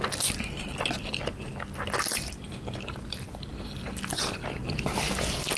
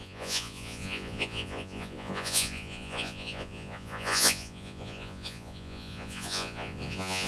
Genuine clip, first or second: first